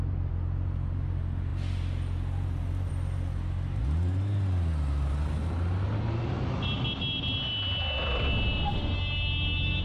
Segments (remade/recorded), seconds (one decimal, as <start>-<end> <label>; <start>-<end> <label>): 0.0-9.8 recorded